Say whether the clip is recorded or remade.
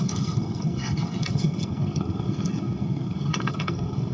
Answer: remade